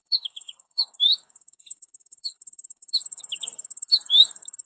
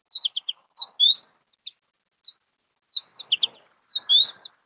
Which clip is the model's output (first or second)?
first